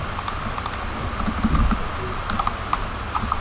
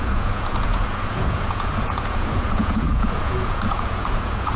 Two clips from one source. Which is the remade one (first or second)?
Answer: second